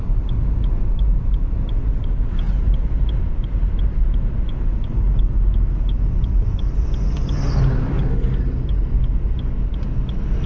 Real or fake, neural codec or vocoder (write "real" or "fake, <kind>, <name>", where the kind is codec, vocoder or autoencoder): real